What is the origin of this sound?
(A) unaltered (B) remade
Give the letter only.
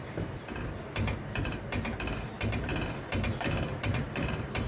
B